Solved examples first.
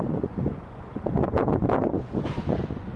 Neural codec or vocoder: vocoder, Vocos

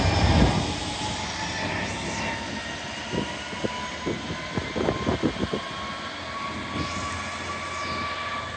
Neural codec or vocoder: none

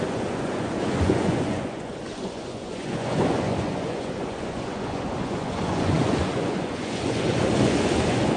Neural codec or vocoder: vocoder, Vocos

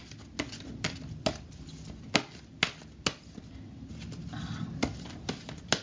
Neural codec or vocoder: none